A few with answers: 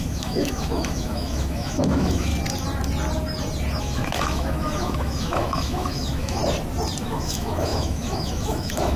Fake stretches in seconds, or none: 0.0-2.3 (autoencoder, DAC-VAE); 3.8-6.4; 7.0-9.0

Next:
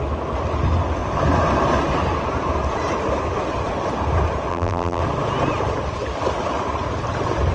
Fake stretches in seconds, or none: 4.5-5.0 (vocoder, BigVGAN v2)

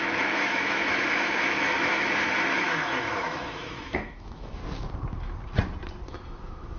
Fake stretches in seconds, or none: 0.0-4.6 (autoencoder, DAC-VAE); 6.1-6.8

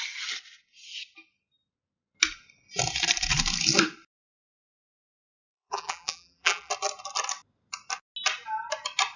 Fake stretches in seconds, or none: 5.2-6.7 (vocoder, BigVGAN v2)